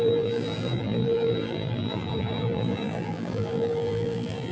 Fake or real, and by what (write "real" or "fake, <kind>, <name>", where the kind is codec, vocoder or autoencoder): fake, vocoder, BigVGAN v2